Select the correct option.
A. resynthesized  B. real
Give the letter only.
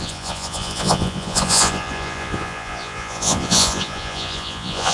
A